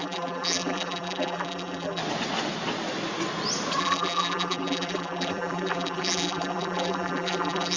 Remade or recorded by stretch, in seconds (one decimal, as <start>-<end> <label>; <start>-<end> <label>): 0.0-2.0 remade; 2.0-3.8 recorded; 3.8-7.8 remade